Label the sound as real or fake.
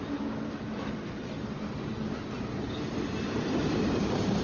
real